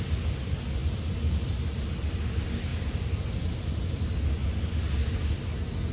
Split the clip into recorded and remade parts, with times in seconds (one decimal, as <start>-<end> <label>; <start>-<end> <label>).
0.0-5.9 recorded